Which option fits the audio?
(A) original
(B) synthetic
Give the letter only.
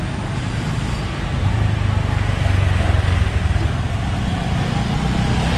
A